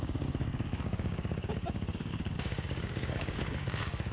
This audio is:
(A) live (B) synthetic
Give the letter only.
B